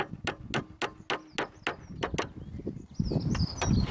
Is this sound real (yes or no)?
yes